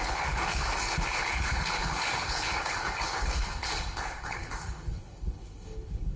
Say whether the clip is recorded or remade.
remade